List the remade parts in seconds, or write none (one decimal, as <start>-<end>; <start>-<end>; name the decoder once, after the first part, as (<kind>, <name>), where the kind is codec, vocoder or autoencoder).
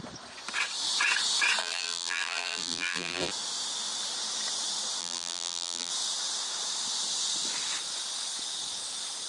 1.6-3.3 (vocoder, BigVGAN v2); 5.0-5.9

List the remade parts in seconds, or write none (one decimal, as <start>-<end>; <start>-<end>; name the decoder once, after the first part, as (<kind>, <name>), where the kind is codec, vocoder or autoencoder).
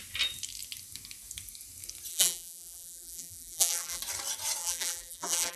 2.1-4.0 (vocoder, BigVGAN v2); 4.6-5.6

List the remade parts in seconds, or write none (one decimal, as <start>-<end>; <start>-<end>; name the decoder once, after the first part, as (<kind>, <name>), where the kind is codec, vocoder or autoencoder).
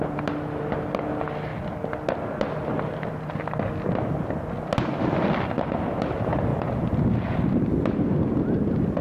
none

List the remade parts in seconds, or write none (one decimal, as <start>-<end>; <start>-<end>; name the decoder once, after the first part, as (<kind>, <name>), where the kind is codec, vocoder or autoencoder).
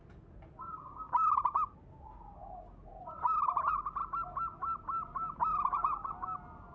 none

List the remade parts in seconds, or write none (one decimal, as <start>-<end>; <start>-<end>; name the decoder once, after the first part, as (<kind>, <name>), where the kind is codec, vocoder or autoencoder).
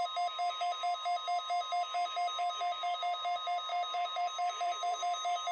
3.7-5.0 (vocoder, BigVGAN v2)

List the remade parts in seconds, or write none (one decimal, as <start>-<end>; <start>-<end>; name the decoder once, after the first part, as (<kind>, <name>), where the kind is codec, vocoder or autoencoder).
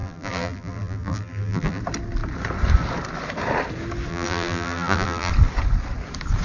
0.0-1.8 (vocoder, BigVGAN v2); 4.1-5.3